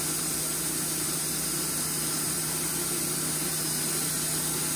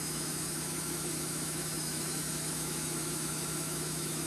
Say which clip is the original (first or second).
first